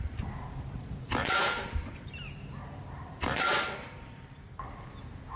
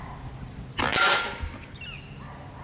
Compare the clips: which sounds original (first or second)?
second